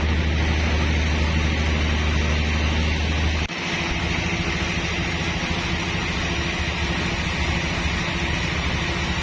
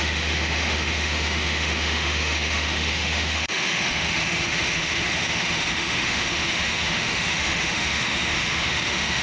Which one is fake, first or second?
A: second